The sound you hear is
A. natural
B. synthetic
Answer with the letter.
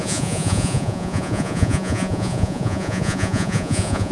B